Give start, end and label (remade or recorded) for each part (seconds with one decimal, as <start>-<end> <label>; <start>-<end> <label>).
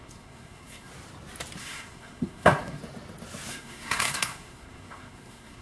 0.0-0.9 remade; 0.9-1.6 recorded; 1.6-2.8 remade; 2.8-3.5 recorded; 3.5-5.6 remade